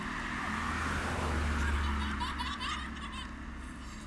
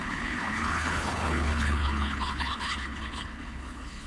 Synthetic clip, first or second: second